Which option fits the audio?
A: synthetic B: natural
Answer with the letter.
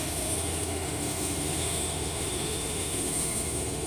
A